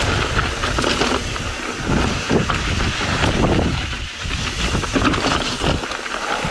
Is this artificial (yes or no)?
no